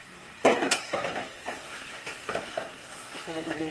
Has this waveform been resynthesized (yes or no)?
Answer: yes